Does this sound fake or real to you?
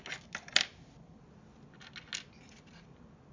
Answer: real